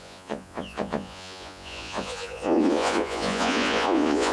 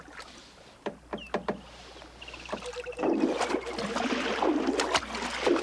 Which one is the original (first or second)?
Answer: second